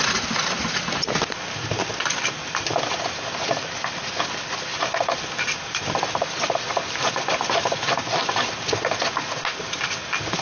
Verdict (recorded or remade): recorded